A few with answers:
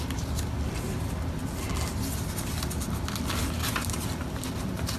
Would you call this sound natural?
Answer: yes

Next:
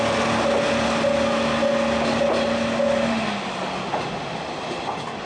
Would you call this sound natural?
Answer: yes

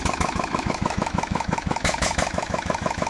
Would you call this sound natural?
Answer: no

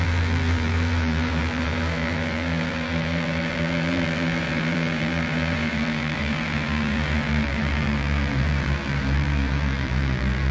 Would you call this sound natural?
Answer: no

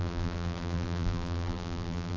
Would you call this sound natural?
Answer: no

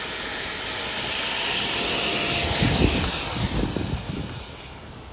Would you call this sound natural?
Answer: yes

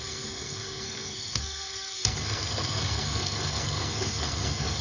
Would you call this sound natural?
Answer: no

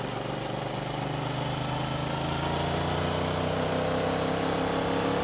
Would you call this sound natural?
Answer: yes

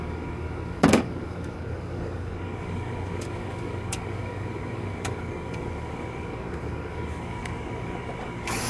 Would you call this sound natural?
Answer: no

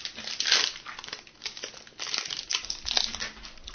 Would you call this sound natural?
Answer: yes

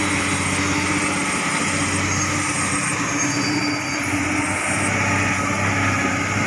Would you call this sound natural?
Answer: yes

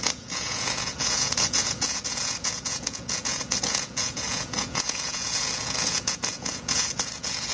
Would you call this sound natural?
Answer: no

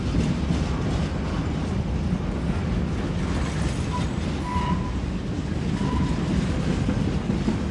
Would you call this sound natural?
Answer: yes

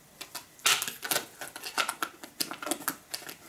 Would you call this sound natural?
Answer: yes